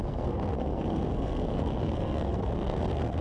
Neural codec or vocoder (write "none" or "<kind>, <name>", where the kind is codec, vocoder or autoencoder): codec, SNAC